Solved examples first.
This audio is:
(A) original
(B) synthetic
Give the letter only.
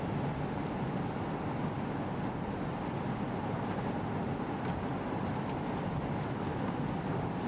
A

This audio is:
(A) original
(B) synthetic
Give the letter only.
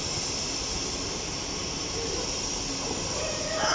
A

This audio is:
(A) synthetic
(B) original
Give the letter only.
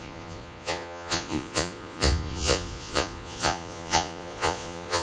A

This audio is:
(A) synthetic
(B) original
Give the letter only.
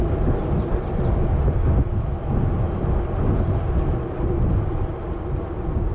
B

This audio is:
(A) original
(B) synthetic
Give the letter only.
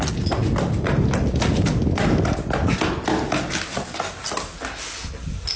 A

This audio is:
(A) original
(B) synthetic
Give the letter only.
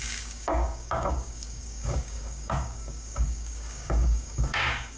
B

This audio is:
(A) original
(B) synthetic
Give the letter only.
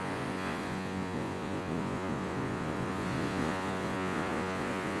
B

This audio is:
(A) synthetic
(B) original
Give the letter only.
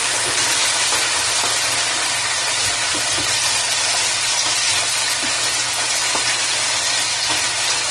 B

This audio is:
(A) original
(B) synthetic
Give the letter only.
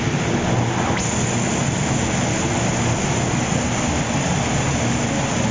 A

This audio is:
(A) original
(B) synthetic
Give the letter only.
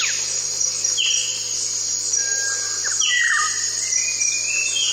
A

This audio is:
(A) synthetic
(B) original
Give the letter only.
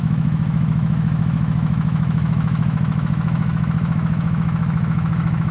A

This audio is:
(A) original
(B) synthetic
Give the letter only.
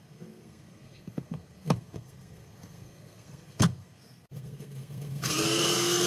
B